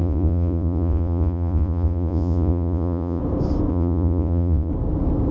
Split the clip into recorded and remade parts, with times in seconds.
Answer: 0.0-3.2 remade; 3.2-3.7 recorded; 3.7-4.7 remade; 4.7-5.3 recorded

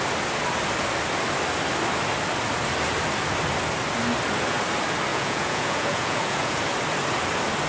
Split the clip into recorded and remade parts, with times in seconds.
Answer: 0.0-5.1 recorded; 5.1-6.6 remade; 6.6-7.7 recorded

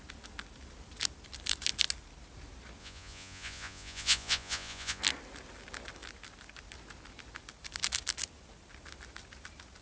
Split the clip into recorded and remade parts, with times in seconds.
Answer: 0.0-2.8 recorded; 2.8-5.0 remade; 5.0-9.8 recorded

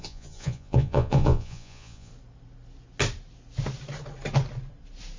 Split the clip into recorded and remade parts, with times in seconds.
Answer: 0.0-2.1 remade; 2.1-5.2 recorded

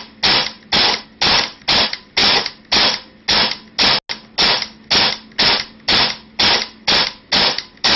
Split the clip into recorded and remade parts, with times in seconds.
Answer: 0.0-8.0 recorded

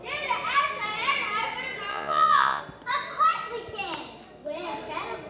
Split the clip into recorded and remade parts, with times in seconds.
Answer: 0.0-1.9 recorded; 1.9-2.6 remade; 2.6-5.3 recorded

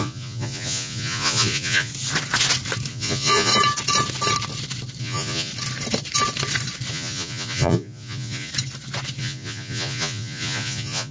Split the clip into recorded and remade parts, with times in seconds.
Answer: 0.0-1.9 remade; 1.9-2.9 recorded; 2.9-3.5 remade; 3.5-5.0 recorded; 5.0-5.5 remade; 5.5-6.9 recorded; 6.9-8.5 remade; 8.5-9.2 recorded; 9.2-11.1 remade